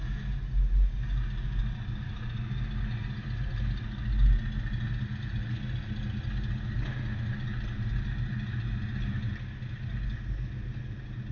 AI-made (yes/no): no